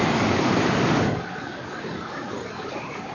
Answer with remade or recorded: remade